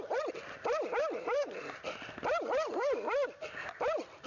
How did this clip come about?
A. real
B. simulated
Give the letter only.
B